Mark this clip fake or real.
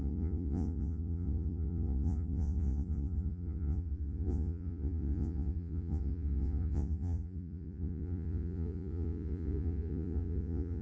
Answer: fake